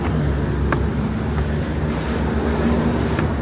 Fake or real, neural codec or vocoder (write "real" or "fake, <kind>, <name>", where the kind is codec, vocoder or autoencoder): real